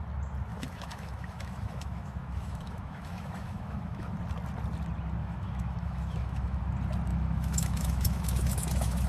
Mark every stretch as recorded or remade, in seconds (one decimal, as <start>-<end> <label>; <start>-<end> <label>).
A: 0.0-0.5 recorded; 0.5-4.2 remade; 4.2-5.2 recorded; 5.2-6.6 remade; 6.6-7.1 recorded; 7.1-9.1 remade